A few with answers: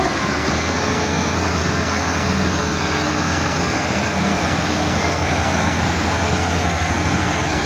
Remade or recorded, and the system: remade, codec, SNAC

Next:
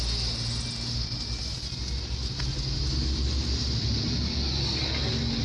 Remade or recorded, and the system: recorded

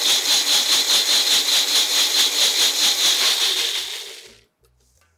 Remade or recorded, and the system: recorded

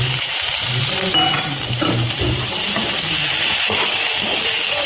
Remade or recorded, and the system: remade, vocoder, BigVGAN v2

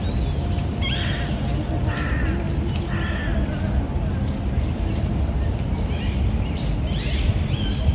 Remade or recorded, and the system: recorded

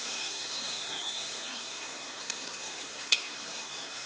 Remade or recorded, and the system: remade, codec, SNAC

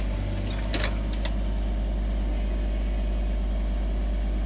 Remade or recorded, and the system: recorded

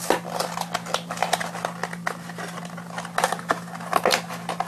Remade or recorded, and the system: recorded